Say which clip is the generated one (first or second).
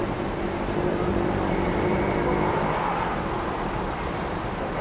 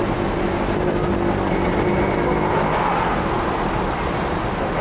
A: first